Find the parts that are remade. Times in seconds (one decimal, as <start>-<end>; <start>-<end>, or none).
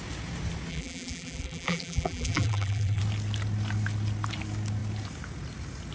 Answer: 0.7-3.0